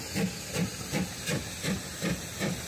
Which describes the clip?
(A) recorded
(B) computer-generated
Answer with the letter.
A